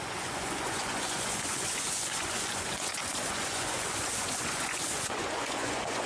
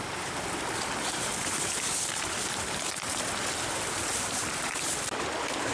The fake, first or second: first